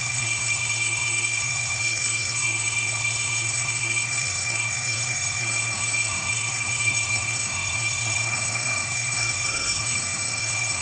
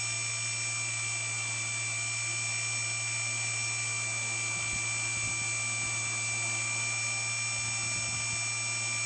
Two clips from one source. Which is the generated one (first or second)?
first